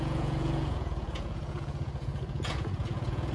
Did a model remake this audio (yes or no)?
yes